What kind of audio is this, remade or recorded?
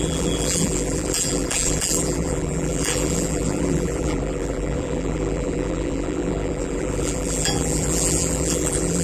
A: remade